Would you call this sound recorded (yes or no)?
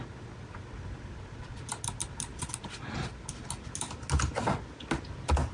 yes